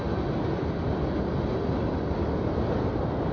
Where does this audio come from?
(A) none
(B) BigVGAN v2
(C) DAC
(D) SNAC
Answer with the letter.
A